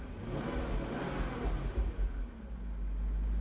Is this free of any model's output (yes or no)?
yes